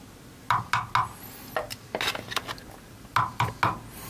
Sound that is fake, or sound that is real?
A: real